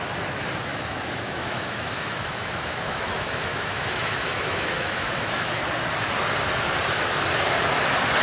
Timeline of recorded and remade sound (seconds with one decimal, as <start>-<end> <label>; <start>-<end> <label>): 0.0-0.7 recorded; 0.7-5.6 remade; 5.6-8.2 recorded